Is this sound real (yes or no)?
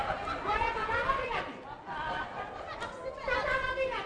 yes